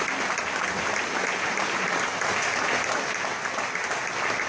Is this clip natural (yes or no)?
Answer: yes